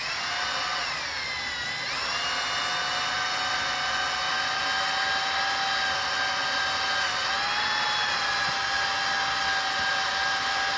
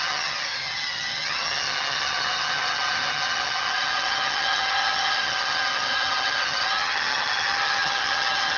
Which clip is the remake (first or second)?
second